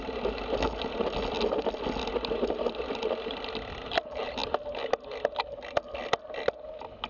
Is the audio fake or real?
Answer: real